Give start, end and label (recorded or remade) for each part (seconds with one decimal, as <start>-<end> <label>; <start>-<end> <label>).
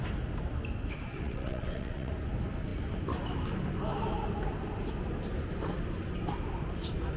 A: 0.0-1.1 recorded; 1.1-2.1 remade; 2.1-7.2 recorded